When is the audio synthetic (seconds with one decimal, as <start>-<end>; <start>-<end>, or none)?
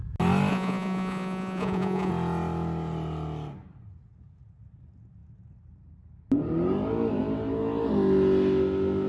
0.5-2.1